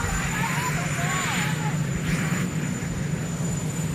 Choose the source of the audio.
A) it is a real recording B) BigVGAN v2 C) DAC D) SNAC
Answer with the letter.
A